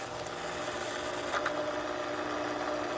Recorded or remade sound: recorded